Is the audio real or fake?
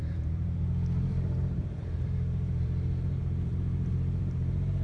fake